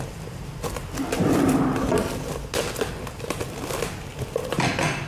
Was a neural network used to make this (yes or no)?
no